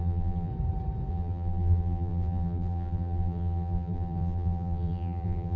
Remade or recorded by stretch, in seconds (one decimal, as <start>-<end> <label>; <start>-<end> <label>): 0.0-0.5 remade; 0.5-1.1 recorded; 1.1-5.6 remade